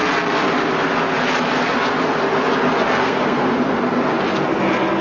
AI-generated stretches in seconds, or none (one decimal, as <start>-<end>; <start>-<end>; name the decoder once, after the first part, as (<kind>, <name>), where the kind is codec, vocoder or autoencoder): 3.0-3.4 (codec, SNAC)